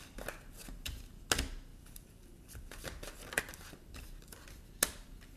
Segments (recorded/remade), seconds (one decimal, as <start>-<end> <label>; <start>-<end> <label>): 0.0-1.7 recorded; 1.7-3.4 remade; 3.4-5.4 recorded